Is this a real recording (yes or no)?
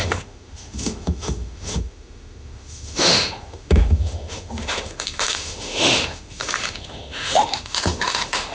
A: no